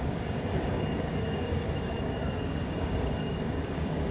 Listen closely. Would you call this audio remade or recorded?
remade